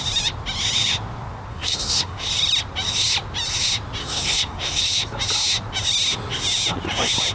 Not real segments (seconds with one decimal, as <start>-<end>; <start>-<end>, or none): 1.5-2.3; 4.0-4.8